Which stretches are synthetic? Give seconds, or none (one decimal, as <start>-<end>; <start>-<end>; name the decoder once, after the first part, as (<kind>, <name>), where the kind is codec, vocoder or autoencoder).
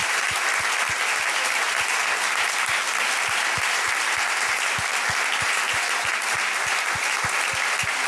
none